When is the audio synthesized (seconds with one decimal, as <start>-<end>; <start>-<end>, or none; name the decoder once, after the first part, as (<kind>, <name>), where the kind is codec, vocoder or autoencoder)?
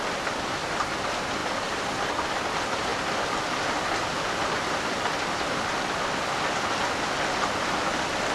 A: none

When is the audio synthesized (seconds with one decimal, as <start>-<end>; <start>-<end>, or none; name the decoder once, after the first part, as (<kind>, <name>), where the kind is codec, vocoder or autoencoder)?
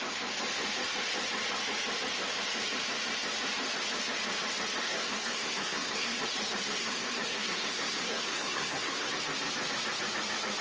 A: 4.8-6.2 (codec, SNAC); 6.8-9.1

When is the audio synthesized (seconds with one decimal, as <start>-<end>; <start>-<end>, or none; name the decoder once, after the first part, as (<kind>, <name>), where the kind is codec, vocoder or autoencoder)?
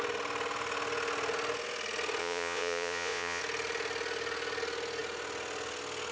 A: 2.2-3.4 (vocoder, Vocos)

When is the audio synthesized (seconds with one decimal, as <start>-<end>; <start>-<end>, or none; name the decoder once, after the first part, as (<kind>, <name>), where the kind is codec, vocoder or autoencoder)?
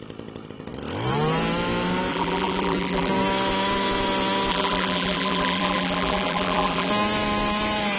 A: 2.1-3.1 (vocoder, BigVGAN v2); 4.5-6.9